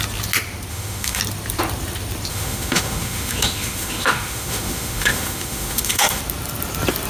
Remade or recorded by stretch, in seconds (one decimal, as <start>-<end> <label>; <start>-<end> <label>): 0.0-0.7 recorded; 0.7-1.2 remade; 1.2-2.3 recorded; 2.3-6.2 remade; 6.2-7.1 recorded